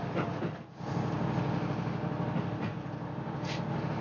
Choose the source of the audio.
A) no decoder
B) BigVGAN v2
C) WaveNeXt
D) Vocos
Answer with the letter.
A